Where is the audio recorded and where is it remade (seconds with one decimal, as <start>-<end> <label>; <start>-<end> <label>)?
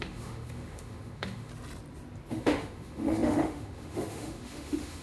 0.0-1.5 remade; 1.5-2.3 recorded; 2.3-5.0 remade